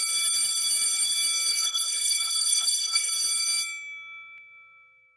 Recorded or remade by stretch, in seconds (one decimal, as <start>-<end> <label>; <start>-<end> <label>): 0.0-1.5 recorded; 1.5-3.1 remade; 3.1-5.2 recorded